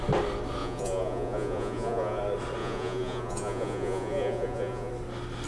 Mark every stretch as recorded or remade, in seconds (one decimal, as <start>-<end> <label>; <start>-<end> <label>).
0.0-0.6 recorded; 0.6-2.2 remade; 2.2-2.6 recorded; 2.6-4.9 remade; 4.9-5.5 recorded